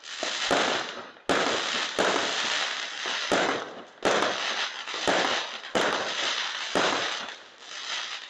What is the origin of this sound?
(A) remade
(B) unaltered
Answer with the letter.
B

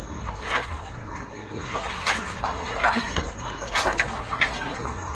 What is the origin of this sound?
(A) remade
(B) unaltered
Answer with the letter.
A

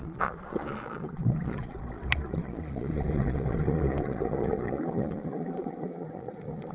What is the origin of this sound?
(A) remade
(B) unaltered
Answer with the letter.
A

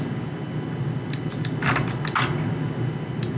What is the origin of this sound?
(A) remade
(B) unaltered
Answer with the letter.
B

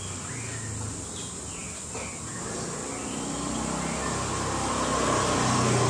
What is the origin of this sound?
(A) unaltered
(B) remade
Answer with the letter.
A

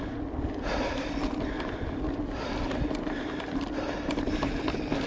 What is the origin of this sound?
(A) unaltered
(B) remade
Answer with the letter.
A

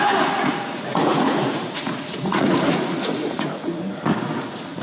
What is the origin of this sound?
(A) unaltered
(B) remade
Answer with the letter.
B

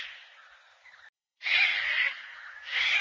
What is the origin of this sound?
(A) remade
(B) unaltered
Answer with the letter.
B